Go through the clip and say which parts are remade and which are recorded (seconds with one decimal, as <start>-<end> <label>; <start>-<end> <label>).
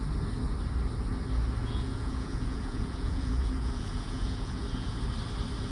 0.0-1.6 recorded; 1.6-5.0 remade; 5.0-5.7 recorded